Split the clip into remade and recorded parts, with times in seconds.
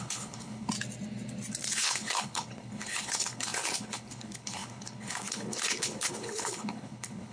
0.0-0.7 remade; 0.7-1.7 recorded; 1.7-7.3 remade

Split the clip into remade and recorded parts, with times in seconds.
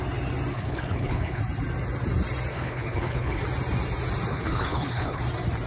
0.0-0.5 recorded; 0.5-1.4 remade; 1.4-2.5 recorded; 2.5-3.4 remade; 3.4-4.3 recorded; 4.3-5.2 remade; 5.2-5.7 recorded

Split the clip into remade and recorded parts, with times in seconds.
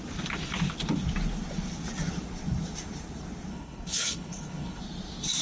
0.0-3.5 recorded; 3.5-4.8 remade; 4.8-5.4 recorded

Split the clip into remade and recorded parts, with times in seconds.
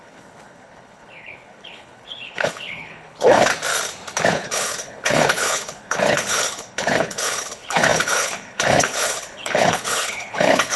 0.0-3.5 remade; 3.5-4.3 recorded; 4.3-10.8 remade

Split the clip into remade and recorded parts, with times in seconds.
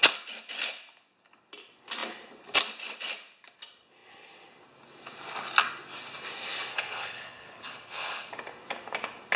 0.0-6.7 recorded; 6.7-8.3 remade; 8.3-9.4 recorded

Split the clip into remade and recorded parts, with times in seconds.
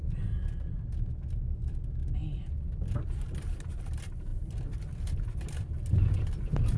0.0-6.8 recorded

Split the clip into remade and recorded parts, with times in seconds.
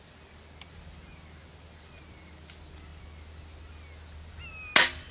0.0-5.1 recorded